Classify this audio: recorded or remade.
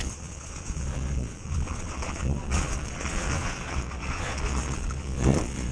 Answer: remade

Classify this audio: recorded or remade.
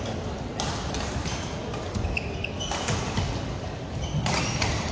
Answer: recorded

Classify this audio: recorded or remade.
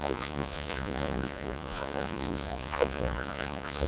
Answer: remade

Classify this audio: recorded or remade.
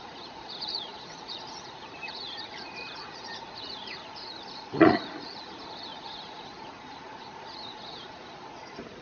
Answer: remade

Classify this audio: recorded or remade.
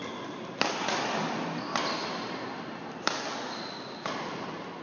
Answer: recorded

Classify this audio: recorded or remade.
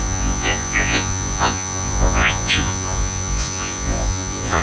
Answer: remade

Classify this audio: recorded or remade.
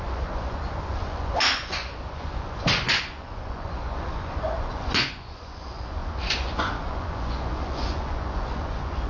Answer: remade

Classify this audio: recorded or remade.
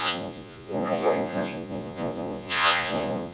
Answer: remade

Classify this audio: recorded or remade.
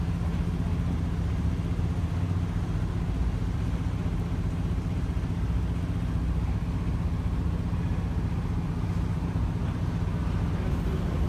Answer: recorded